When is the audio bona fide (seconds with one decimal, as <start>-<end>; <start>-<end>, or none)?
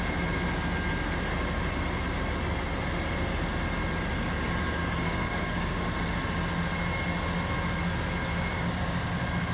0.0-4.8; 5.8-8.3; 9.1-9.5